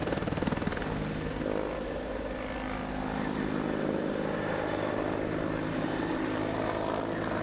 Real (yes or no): yes